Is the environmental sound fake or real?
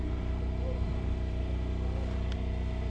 real